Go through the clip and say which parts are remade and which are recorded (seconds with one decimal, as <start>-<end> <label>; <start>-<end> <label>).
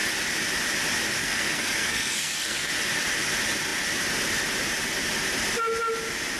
0.0-1.2 recorded; 1.2-2.7 remade; 2.7-6.4 recorded